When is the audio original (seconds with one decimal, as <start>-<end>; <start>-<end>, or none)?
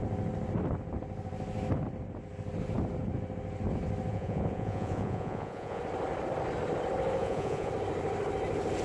0.0-4.1; 5.8-7.2; 7.7-8.8